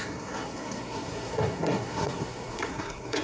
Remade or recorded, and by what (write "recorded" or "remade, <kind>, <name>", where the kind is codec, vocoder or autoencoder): remade, codec, SNAC